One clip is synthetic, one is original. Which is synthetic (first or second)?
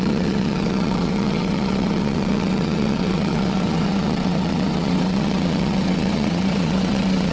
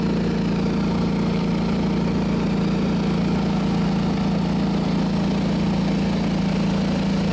first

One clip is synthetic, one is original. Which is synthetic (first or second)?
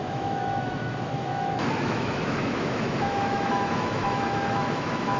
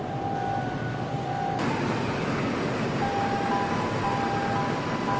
first